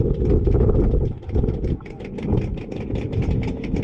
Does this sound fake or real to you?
real